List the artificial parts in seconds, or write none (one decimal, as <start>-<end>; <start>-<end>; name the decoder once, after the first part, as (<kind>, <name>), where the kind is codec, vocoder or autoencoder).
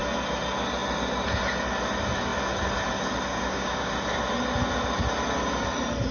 3.3-3.9 (codec, DAC)